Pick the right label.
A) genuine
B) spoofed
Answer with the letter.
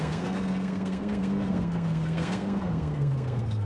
B